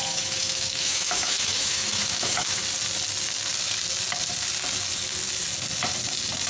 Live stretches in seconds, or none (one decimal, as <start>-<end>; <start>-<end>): 2.6-6.5